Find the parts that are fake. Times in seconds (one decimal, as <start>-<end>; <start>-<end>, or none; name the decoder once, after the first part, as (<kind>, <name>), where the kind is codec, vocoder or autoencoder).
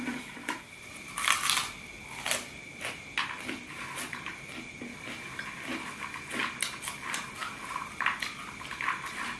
none